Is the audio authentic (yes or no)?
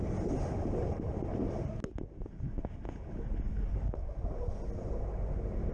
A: yes